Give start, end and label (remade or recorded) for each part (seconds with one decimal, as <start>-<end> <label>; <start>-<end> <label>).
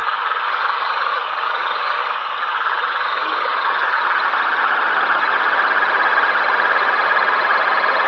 0.0-4.0 remade; 4.0-8.1 recorded